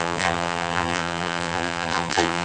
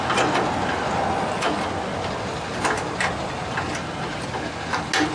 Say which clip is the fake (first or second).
first